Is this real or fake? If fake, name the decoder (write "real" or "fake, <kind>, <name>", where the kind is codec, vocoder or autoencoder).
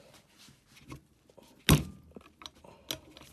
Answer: real